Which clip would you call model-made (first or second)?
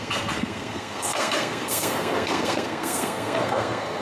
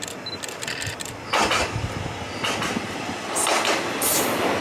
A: first